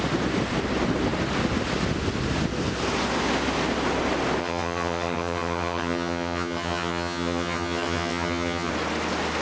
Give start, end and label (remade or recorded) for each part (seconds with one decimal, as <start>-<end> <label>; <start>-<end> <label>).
0.0-4.4 recorded; 4.4-8.7 remade; 8.7-9.4 recorded